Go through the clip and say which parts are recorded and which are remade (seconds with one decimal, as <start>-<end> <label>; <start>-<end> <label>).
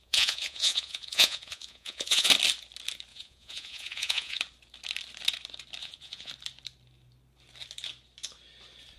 0.0-2.3 remade; 2.3-3.1 recorded; 3.1-4.4 remade; 4.4-5.8 recorded; 5.8-6.3 remade; 6.3-9.0 recorded